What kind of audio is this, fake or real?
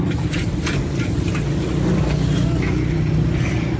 real